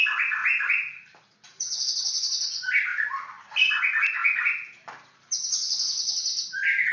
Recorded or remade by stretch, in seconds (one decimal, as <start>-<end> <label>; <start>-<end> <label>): 0.0-6.9 recorded